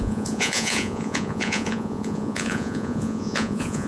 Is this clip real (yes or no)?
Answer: no